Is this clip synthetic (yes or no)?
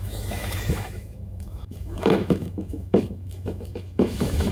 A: yes